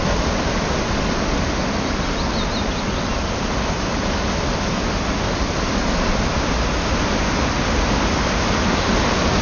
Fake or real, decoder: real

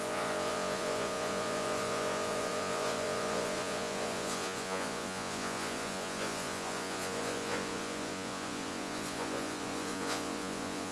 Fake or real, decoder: fake, vocoder, Vocos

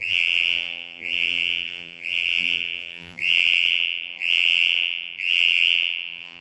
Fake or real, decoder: fake, vocoder, BigVGAN v2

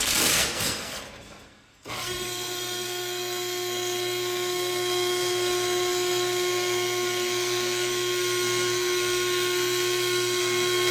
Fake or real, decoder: fake, codec, SNAC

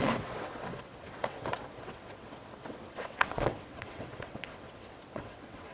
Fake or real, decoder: fake, vocoder, WaveNeXt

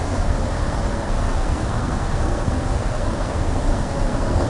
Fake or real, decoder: fake, codec, SNAC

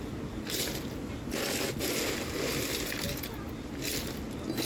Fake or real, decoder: real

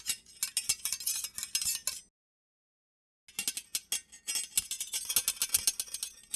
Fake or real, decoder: real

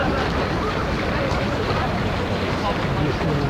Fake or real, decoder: real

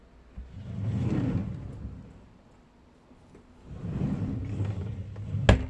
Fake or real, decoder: real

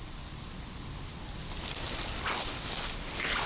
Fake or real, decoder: real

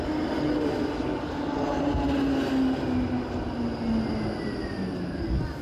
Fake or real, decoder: real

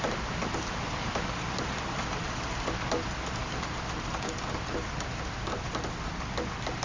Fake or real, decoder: real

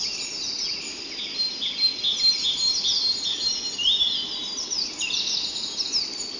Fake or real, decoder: real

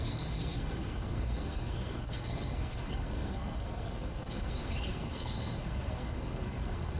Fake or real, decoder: fake, codec, SNAC